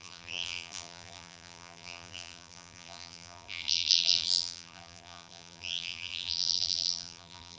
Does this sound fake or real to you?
fake